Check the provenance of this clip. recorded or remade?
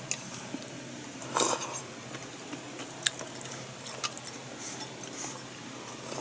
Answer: recorded